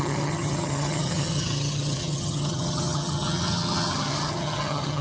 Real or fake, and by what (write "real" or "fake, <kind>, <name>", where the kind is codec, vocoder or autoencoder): fake, vocoder, HiFi-GAN